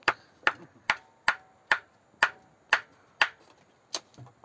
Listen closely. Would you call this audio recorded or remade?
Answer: recorded